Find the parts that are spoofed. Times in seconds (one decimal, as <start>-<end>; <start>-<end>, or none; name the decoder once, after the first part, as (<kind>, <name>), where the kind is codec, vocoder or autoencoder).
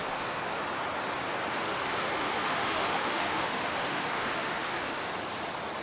0.0-0.6 (autoencoder, DAC-VAE); 1.6-5.1